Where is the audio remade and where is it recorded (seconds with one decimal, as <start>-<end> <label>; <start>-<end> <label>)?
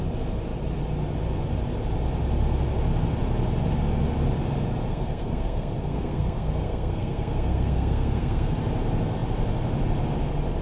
0.0-4.9 recorded; 4.9-8.5 remade; 8.5-10.6 recorded